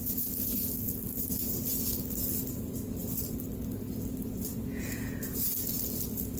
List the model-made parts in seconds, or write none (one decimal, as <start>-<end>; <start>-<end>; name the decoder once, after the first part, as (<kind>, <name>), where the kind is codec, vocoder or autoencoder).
4.5-5.5 (vocoder, Vocos)